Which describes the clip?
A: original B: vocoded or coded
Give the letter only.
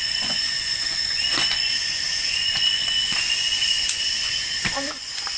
B